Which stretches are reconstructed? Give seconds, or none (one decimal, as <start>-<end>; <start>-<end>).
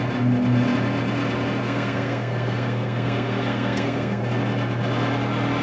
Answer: 1.6-4.2